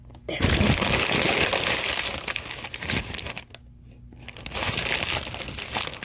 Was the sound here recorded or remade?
recorded